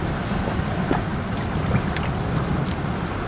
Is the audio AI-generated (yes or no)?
no